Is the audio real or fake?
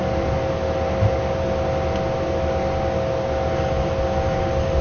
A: real